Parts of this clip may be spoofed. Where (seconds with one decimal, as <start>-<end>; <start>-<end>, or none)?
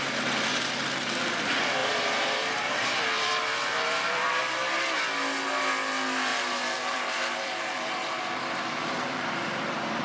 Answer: 1.8-4.4; 6.3-10.0